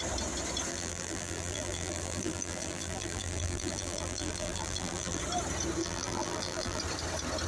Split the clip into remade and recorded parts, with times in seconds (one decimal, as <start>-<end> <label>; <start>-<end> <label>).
0.0-0.7 recorded; 0.7-5.2 remade; 5.2-5.8 recorded; 5.8-6.8 remade; 6.8-7.5 recorded